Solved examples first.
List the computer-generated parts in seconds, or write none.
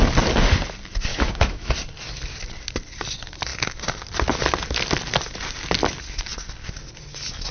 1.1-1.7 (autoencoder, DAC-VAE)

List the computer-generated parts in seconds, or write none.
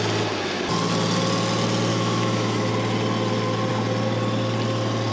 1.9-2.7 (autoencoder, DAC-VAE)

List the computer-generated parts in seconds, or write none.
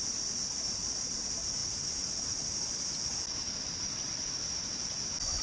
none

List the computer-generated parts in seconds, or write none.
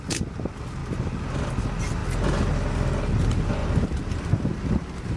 none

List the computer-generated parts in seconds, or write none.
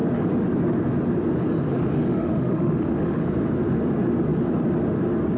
1.7-3.2 (autoencoder, DAC-VAE)